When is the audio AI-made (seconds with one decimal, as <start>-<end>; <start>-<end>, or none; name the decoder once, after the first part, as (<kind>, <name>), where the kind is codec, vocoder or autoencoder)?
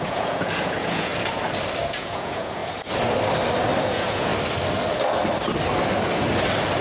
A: 0.0-1.1 (vocoder, Vocos); 1.9-2.6; 3.8-4.3